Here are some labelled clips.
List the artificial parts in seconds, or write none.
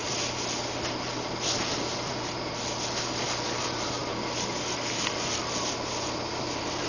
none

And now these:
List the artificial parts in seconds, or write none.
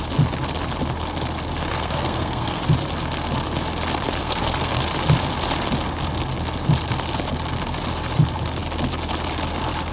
1.7-2.6 (codec, SNAC); 4.2-4.7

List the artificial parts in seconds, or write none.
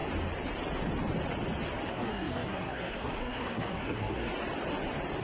1.9-4.3 (codec, SNAC)